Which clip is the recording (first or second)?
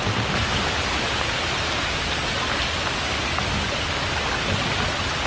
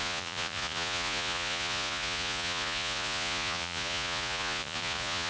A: first